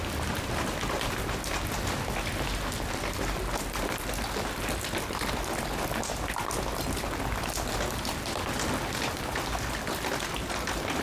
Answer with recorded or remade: recorded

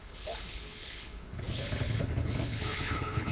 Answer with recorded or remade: remade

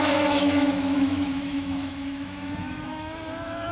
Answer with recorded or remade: remade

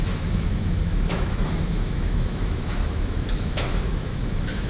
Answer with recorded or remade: remade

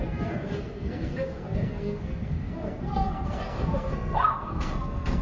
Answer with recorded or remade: remade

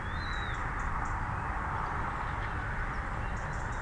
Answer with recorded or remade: recorded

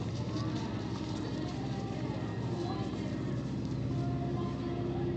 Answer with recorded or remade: recorded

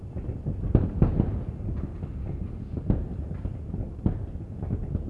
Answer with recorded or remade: recorded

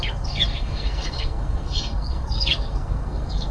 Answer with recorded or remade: remade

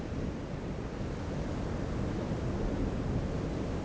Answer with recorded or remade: recorded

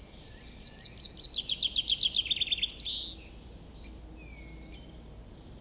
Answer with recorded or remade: recorded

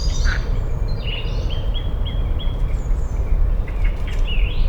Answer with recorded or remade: remade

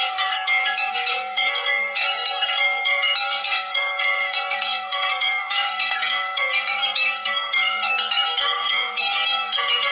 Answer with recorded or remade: remade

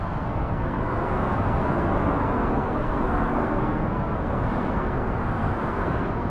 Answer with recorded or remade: remade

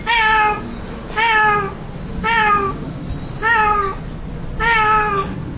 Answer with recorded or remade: recorded